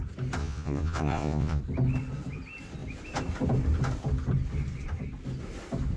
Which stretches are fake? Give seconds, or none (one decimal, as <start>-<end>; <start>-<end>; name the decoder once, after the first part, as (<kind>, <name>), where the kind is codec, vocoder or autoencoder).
0.4-1.6 (vocoder, Vocos)